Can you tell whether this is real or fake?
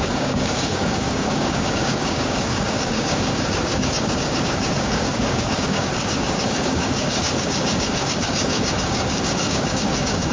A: fake